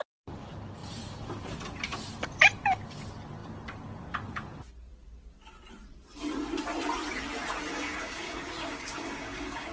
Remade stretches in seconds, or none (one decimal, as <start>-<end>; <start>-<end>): 7.7-9.7